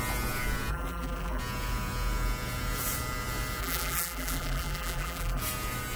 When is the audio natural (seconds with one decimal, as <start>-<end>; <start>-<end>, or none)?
0.0-0.7; 1.4-3.6; 5.4-6.0